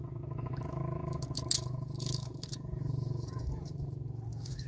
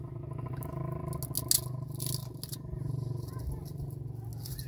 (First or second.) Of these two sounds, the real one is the second